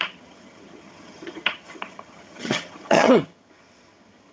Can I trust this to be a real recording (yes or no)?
no